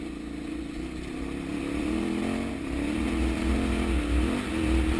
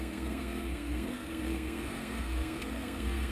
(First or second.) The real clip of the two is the first